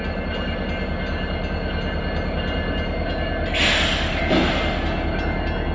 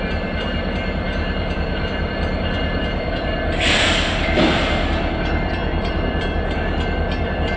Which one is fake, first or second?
second